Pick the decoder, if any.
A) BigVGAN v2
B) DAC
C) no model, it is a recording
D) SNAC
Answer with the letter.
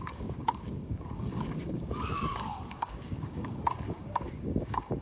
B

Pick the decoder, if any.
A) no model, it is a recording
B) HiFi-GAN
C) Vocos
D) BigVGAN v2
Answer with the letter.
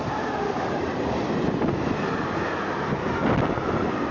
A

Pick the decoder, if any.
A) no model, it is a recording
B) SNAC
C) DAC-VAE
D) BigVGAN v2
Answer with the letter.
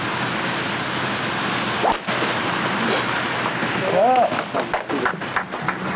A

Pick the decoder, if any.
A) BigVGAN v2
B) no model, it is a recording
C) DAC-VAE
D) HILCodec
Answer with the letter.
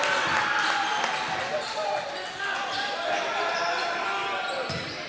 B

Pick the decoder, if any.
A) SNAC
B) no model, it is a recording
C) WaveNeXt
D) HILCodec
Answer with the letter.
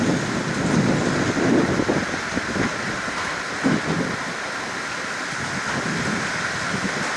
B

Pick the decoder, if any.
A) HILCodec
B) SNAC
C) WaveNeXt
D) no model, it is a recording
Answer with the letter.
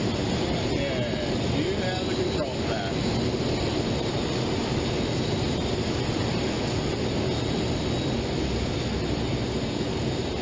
D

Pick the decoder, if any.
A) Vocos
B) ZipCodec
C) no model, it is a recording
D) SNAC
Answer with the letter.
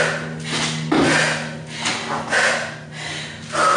C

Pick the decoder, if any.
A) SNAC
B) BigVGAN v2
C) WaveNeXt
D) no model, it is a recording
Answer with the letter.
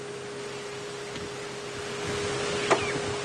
D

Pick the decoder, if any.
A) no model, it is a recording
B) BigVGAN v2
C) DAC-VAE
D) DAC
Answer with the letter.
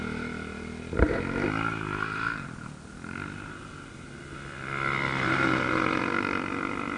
A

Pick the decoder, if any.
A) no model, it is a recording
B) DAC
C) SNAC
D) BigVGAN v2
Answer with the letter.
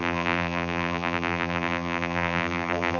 D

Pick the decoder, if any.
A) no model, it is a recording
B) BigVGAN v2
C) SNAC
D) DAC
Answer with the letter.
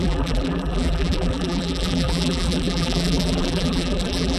B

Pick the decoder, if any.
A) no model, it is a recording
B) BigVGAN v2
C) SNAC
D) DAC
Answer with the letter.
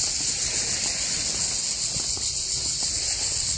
A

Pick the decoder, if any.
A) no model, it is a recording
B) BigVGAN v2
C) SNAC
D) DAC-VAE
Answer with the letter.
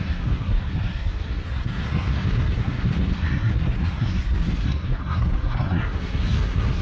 C